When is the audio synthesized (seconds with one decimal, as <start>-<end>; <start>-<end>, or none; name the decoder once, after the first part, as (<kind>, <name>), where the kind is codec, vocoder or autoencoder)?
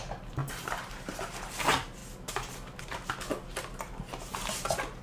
0.4-1.3 (vocoder, BigVGAN v2)